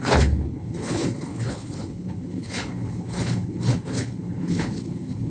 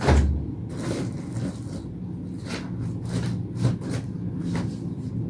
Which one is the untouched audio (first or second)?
second